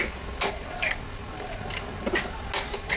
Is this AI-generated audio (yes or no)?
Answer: no